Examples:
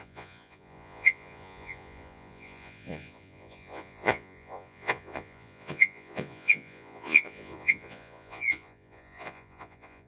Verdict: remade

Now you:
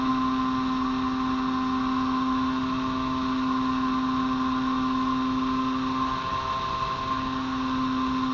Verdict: recorded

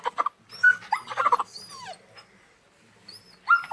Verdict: recorded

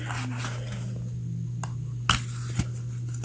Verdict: recorded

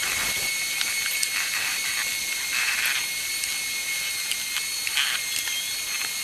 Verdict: recorded